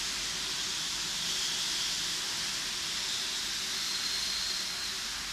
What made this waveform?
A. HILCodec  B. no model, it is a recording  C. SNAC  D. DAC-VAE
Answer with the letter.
B